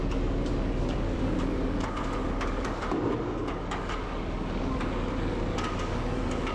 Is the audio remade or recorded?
remade